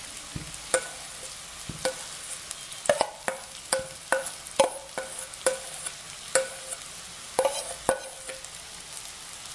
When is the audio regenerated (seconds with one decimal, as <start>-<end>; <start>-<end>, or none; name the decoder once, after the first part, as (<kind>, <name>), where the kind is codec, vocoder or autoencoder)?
2.7-5.5 (vocoder, BigVGAN v2)